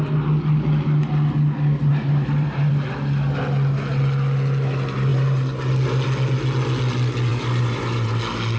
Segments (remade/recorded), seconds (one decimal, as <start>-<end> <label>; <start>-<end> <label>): 0.0-1.9 recorded; 1.9-2.7 remade; 2.7-5.1 recorded; 5.1-5.6 remade; 5.6-7.3 recorded; 7.3-8.2 remade; 8.2-8.6 recorded